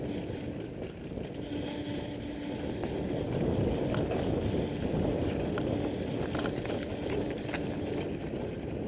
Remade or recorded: recorded